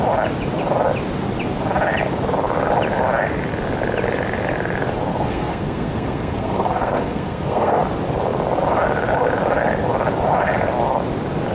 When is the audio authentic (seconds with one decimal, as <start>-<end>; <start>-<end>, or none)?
0.0-5.1; 7.8-11.5